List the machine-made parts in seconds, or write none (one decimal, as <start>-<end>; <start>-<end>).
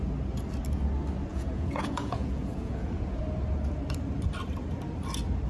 1.3-3.2